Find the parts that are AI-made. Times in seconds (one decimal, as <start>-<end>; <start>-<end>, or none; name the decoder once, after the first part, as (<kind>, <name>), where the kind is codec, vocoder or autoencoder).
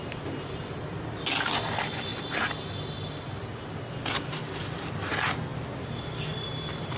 none